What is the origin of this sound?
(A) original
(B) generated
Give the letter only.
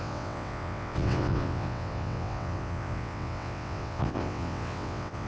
B